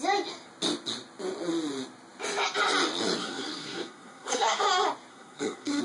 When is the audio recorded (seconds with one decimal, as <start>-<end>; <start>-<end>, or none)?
0.0-3.2; 4.6-5.1